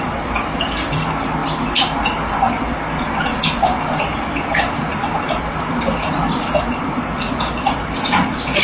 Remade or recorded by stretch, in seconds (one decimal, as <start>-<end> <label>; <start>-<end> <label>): 0.0-8.6 recorded